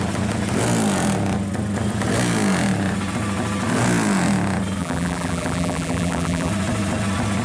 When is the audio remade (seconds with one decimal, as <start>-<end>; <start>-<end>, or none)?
4.8-6.5